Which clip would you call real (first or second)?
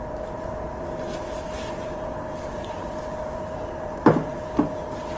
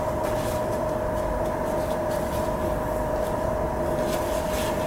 second